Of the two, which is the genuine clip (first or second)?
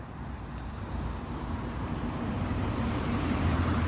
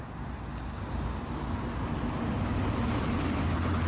second